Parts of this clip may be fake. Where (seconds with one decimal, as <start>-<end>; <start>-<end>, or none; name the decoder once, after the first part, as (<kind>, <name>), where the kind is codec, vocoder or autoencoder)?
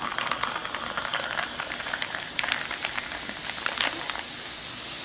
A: none